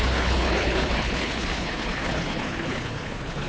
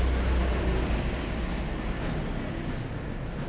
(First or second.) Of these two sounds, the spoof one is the first